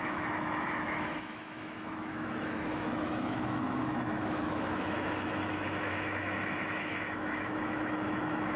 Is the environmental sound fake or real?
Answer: fake